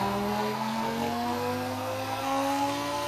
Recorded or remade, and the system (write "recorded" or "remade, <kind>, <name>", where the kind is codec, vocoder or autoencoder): remade, codec, SNAC